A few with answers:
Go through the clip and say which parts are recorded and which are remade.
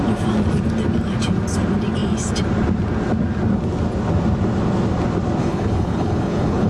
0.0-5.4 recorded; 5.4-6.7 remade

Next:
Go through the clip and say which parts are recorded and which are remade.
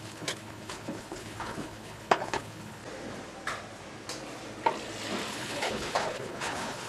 0.0-2.8 remade; 2.8-5.3 recorded; 5.3-6.9 remade